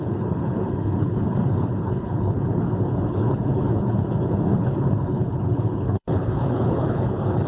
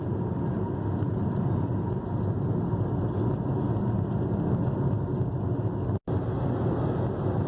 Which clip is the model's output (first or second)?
first